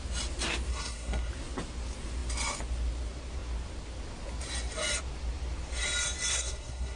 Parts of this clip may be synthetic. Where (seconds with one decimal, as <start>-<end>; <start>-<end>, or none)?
0.7-1.3; 6.3-7.0